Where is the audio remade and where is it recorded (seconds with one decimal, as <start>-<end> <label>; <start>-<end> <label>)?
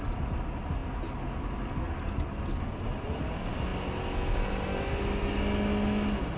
0.0-6.4 recorded